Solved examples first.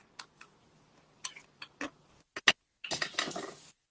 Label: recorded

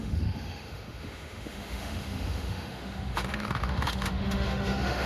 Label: remade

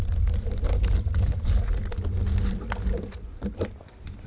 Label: recorded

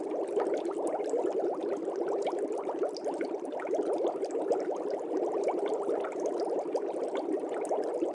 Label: recorded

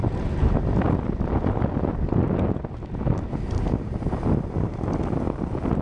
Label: recorded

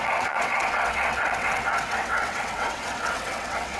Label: remade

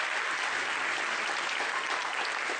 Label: recorded